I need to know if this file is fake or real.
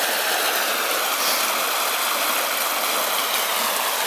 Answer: real